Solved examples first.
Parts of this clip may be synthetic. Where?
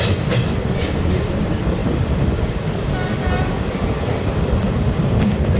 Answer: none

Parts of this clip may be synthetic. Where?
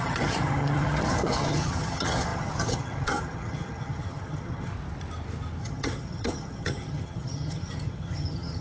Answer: 0.0-4.7 (vocoder, HiFi-GAN); 5.6-8.6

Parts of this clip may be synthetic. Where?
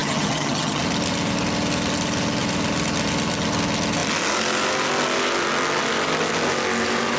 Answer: 0.0-0.8 (vocoder, HiFi-GAN)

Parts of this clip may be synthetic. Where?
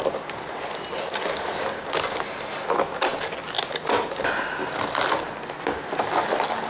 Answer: none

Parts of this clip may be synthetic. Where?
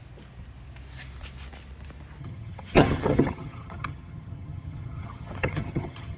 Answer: 2.2-6.2 (vocoder, HiFi-GAN)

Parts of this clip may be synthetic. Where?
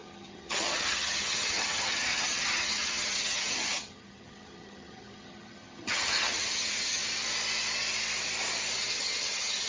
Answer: 0.0-7.0 (vocoder, HiFi-GAN); 8.8-9.7